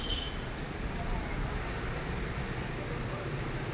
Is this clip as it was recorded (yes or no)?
yes